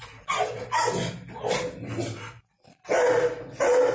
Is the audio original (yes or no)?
yes